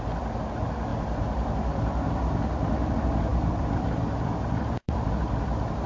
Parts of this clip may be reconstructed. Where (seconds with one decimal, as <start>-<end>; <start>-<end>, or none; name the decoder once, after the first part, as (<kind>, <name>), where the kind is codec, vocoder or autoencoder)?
0.9-2.9 (vocoder, BigVGAN v2); 3.3-5.1